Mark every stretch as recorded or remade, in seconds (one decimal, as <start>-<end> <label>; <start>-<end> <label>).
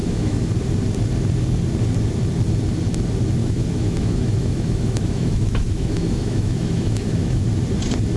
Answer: 0.0-0.5 remade; 0.5-3.4 recorded; 3.4-7.4 remade; 7.4-8.2 recorded